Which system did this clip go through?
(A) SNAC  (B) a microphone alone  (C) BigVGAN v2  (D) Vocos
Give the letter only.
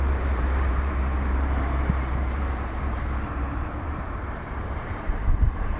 C